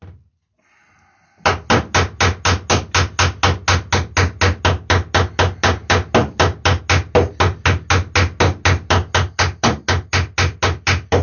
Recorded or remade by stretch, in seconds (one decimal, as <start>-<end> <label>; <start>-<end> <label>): 0.0-11.2 recorded